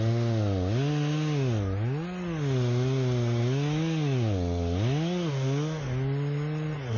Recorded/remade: recorded